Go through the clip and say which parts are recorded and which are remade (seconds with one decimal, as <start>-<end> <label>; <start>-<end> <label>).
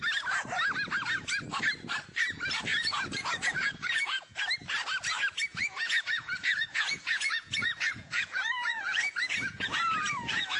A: 0.0-2.7 recorded; 2.7-4.4 remade; 4.4-5.5 recorded; 5.5-10.6 remade